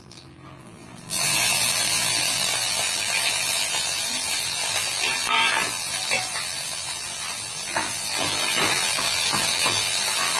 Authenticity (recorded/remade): remade